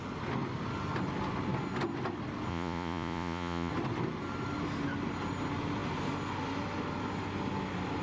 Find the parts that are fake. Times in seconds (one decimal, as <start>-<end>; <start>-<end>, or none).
2.5-3.7